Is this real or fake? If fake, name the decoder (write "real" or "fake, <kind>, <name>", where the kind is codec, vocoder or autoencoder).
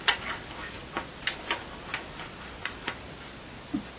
real